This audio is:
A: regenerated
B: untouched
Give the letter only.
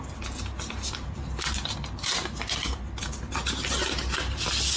B